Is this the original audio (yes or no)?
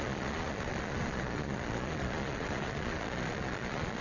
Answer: no